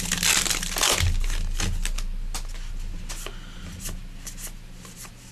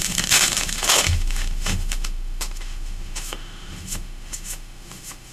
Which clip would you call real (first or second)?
first